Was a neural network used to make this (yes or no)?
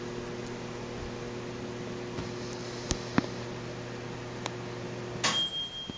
no